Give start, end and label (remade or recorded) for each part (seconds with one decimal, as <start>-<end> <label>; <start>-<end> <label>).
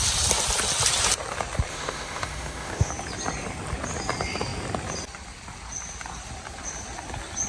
0.0-1.7 recorded; 1.7-2.9 remade; 2.9-7.5 recorded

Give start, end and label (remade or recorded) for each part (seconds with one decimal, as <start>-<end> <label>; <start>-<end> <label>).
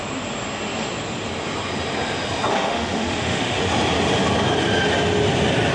0.0-2.5 recorded; 2.5-3.6 remade; 3.6-5.7 recorded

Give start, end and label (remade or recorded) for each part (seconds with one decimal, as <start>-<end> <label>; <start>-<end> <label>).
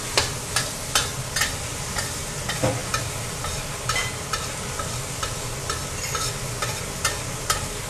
0.0-7.9 recorded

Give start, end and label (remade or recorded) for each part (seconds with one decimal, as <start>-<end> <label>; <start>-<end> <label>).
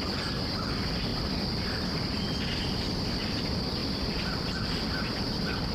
0.0-5.7 recorded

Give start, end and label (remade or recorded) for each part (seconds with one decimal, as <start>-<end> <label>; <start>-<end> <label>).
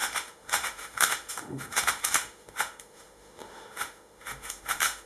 0.0-5.1 remade